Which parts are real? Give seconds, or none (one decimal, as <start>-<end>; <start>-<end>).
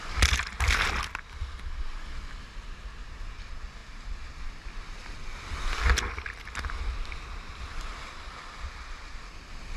0.0-9.8